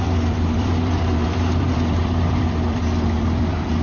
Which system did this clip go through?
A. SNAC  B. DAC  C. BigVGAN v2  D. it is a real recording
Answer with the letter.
C